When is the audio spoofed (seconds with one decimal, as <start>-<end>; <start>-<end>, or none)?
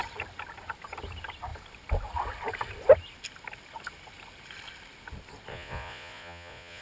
5.5-6.8